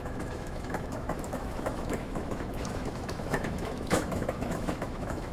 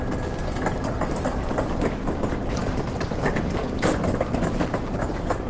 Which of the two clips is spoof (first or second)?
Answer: first